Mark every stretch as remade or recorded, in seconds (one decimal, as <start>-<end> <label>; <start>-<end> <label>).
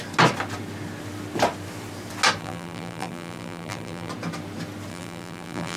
0.0-2.4 recorded; 2.4-4.1 remade; 4.1-4.9 recorded; 4.9-5.8 remade